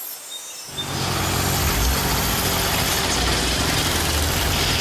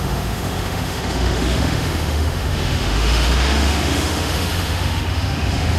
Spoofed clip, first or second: second